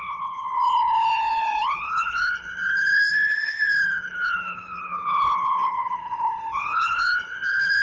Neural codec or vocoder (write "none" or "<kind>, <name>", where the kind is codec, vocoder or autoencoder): codec, HILCodec